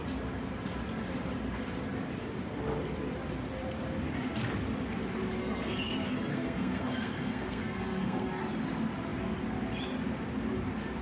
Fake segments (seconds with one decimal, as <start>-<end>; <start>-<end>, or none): 5.4-8.4